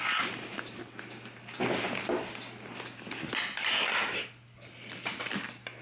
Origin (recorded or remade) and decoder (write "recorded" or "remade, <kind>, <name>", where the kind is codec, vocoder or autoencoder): recorded